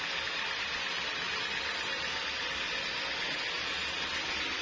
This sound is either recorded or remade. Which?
recorded